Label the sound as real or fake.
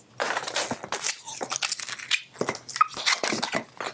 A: real